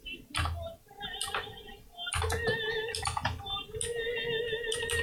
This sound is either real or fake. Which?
real